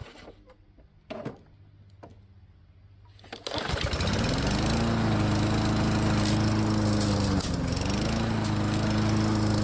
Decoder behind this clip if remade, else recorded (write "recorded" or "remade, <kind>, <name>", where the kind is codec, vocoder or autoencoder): recorded